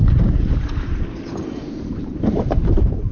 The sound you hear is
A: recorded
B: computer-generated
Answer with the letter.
B